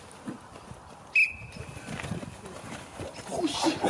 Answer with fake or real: real